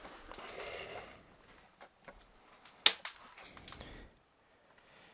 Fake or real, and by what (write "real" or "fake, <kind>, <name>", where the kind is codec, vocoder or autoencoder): real